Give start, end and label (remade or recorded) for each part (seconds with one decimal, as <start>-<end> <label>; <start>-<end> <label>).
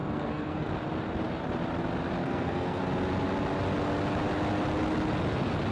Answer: 0.0-0.7 remade; 0.7-2.2 recorded; 2.2-2.8 remade; 2.8-5.7 recorded